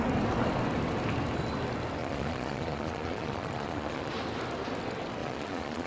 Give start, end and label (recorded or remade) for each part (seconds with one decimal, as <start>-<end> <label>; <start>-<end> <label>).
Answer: 0.0-2.0 recorded; 2.0-4.1 remade; 4.1-5.2 recorded; 5.2-5.9 remade